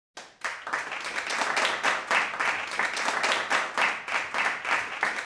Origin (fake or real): real